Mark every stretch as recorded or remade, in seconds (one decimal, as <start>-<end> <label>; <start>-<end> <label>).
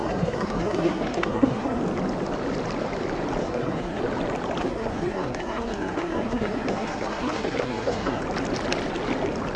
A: 0.0-1.8 remade; 1.8-3.4 recorded; 3.4-4.0 remade; 4.0-4.6 recorded; 4.6-8.2 remade; 8.2-9.6 recorded